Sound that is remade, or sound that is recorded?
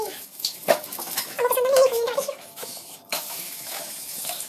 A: remade